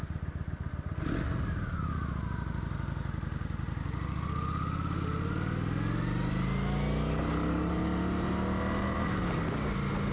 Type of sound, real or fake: real